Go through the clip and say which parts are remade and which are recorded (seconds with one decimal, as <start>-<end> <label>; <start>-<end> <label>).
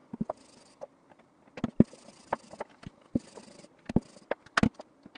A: 0.0-5.2 recorded